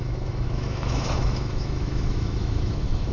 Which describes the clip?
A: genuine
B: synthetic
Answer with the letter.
B